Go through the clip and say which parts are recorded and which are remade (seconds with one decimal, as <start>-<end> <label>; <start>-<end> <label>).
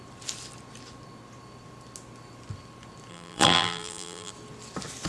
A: 0.0-3.1 recorded; 3.1-4.3 remade; 4.3-5.1 recorded